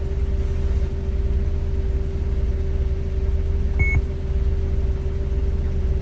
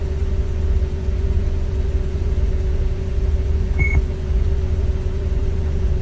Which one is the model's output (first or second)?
second